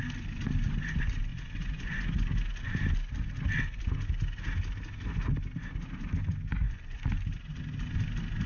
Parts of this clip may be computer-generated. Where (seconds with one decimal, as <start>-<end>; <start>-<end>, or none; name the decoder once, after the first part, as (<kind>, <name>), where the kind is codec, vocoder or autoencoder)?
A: 1.3-2.0 (vocoder, Vocos); 6.5-7.0